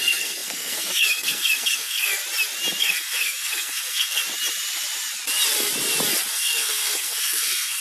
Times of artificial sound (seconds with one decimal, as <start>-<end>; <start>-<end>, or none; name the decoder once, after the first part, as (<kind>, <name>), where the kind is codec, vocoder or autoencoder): 0.0-2.2 (codec, SNAC); 2.8-4.2; 6.3-7.8